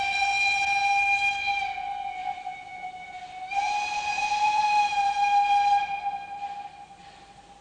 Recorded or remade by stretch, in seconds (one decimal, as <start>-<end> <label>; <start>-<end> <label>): 0.0-2.2 recorded; 2.2-5.1 remade; 5.1-7.6 recorded